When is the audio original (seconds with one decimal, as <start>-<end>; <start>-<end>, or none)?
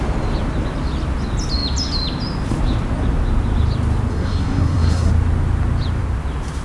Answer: 0.0-4.1; 5.1-6.6